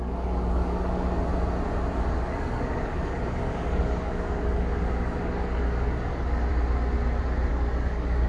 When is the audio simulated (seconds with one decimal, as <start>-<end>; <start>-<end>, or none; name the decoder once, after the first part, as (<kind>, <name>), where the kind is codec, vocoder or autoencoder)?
0.0-1.3 (codec, DAC); 2.1-6.5; 7.5-8.3

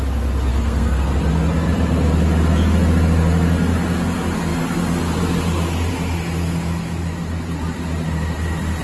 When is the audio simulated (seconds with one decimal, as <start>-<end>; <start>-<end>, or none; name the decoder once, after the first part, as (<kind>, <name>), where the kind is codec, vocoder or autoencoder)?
0.5-1.1 (codec, SNAC)

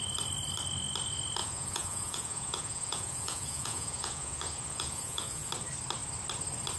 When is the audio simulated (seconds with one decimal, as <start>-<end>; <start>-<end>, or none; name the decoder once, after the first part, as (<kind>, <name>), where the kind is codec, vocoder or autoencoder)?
1.4-5.5 (vocoder, Vocos)

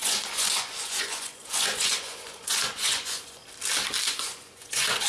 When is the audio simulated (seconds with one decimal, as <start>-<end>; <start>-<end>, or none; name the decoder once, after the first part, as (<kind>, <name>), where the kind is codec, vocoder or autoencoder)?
0.0-3.4 (vocoder, Vocos); 4.1-5.1

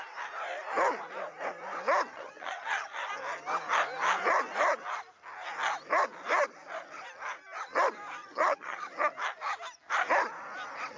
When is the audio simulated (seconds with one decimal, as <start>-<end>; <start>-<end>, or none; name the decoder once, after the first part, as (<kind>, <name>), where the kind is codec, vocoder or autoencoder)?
2.1-3.1 (vocoder, HiFi-GAN); 8.2-8.9